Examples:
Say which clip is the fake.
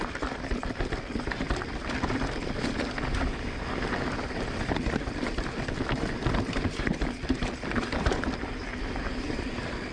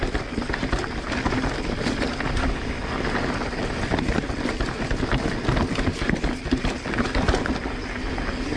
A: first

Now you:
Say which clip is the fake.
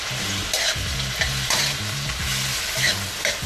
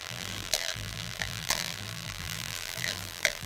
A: second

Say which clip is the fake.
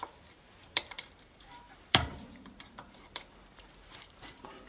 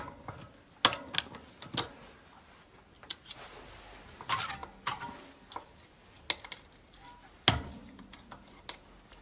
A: first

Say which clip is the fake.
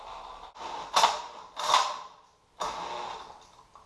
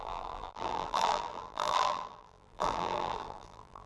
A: second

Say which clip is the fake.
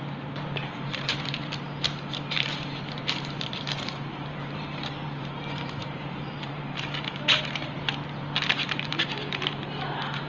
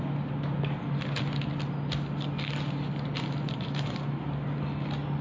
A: first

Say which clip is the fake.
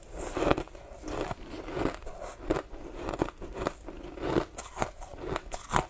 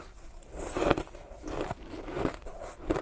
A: second